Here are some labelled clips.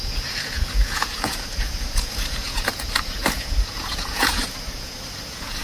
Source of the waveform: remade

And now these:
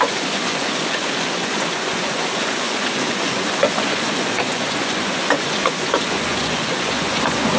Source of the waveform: remade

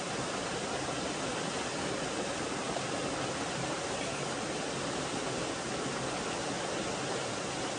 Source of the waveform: recorded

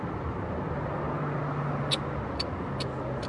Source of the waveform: recorded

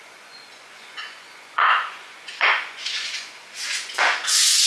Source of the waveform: remade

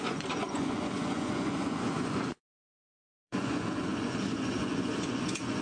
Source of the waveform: remade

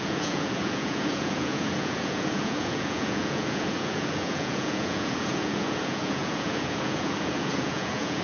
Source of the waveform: remade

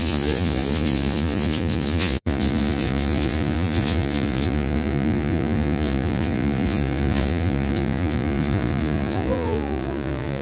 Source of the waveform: remade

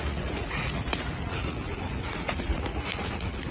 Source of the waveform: remade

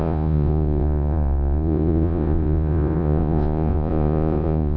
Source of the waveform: remade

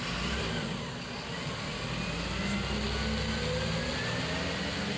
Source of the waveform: recorded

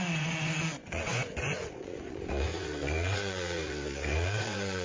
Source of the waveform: remade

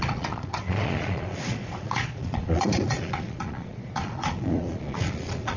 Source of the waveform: remade